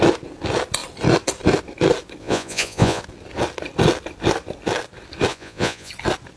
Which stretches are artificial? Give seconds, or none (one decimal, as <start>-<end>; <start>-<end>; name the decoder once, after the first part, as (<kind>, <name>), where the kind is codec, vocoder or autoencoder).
2.2-3.0 (vocoder, Vocos); 5.3-5.9